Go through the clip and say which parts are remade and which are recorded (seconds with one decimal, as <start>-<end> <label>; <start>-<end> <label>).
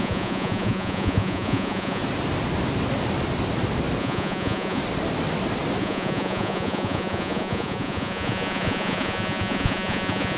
0.0-2.0 remade; 2.0-4.0 recorded; 4.0-4.8 remade; 4.8-5.8 recorded; 5.8-10.4 remade